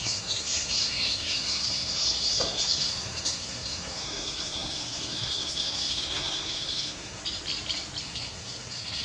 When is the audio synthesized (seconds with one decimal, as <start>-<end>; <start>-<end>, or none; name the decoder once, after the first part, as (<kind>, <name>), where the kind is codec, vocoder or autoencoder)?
0.0-7.2 (codec, SNAC); 8.0-9.0